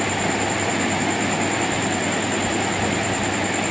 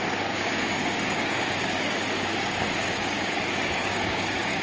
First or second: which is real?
first